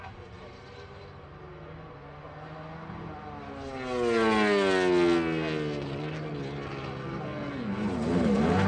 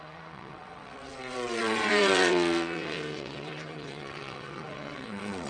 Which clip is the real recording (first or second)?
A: first